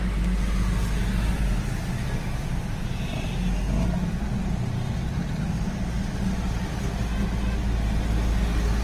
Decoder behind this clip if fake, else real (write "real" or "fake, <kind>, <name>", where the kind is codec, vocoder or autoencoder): real